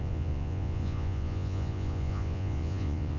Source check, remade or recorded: remade